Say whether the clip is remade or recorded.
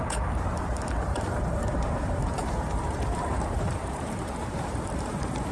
remade